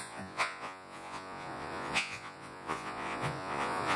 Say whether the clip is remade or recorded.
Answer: remade